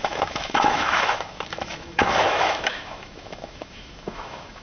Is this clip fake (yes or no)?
yes